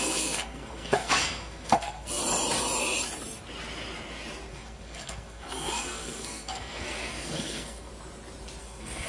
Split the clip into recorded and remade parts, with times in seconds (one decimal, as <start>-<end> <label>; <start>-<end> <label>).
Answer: 0.0-2.2 remade; 2.2-4.5 recorded; 4.5-7.9 remade; 7.9-8.6 recorded; 8.6-9.1 remade